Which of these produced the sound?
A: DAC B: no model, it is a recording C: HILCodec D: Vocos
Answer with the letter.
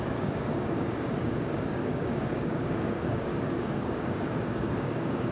A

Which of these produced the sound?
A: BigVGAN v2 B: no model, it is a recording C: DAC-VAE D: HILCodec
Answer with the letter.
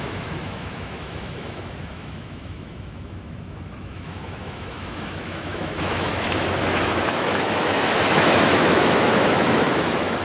C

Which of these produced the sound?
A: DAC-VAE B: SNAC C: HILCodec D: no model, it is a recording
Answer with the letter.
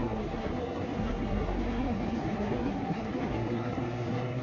B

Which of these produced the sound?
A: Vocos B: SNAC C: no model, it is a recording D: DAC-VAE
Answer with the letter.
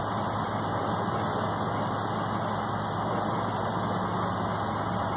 C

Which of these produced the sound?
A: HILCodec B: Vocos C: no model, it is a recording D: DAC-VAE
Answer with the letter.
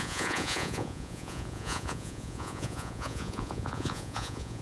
B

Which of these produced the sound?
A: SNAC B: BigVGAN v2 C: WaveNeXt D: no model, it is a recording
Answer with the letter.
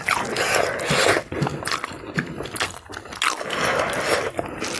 D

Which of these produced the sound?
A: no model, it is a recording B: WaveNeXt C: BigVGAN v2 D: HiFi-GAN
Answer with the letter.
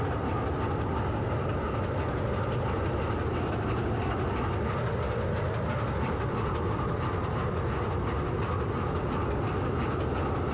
A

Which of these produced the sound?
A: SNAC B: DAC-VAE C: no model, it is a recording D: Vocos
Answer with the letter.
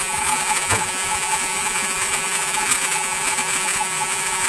D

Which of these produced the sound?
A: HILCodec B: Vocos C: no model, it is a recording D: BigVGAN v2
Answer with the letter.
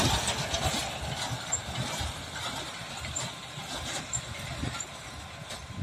C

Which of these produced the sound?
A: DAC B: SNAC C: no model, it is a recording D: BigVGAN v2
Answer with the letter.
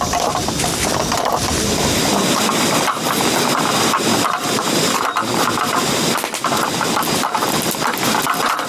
D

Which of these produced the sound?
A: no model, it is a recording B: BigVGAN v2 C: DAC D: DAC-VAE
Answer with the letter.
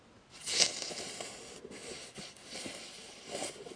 A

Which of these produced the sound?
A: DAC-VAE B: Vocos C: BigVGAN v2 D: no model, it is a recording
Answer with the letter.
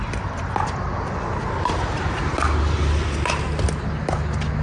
D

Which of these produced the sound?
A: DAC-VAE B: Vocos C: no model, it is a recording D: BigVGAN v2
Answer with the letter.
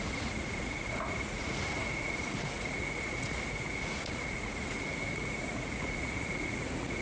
B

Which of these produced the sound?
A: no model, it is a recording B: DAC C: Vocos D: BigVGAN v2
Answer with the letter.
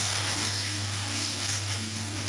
B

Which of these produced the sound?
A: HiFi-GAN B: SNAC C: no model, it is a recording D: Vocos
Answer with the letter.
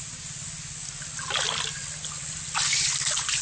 C